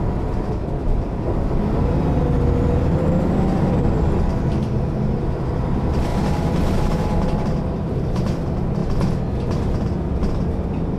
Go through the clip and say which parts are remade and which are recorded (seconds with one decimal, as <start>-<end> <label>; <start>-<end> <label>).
0.0-6.1 remade; 6.1-6.9 recorded; 6.9-11.0 remade